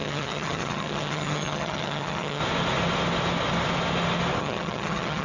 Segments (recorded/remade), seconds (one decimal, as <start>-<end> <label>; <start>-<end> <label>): 0.0-2.4 remade; 2.4-4.4 recorded; 4.4-5.2 remade